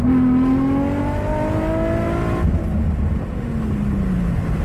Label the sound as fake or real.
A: real